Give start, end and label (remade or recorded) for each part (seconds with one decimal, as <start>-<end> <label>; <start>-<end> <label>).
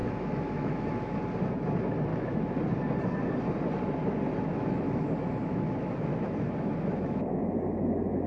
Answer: 0.0-1.2 remade; 1.2-2.1 recorded; 2.1-2.6 remade; 2.6-4.5 recorded; 4.5-8.3 remade